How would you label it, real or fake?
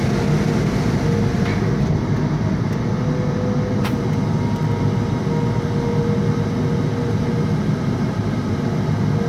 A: real